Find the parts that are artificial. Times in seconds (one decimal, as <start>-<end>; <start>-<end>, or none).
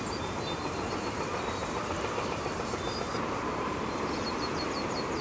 0.0-5.2